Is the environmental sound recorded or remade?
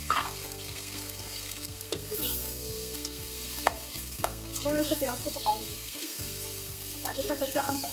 remade